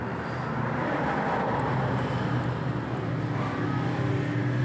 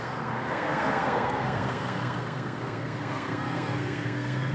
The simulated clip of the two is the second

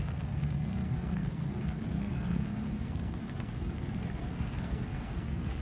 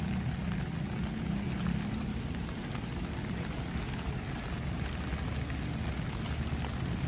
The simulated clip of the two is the first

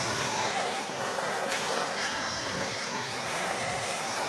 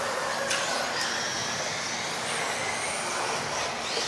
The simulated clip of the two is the first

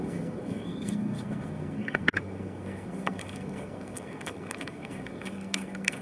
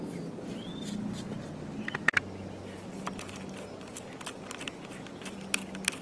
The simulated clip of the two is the first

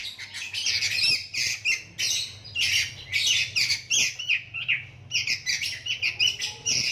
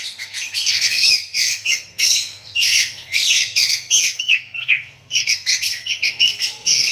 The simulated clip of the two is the second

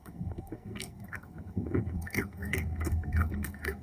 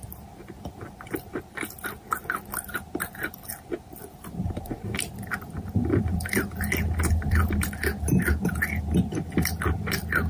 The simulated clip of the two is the first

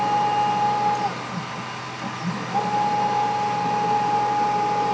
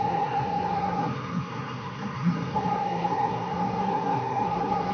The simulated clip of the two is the second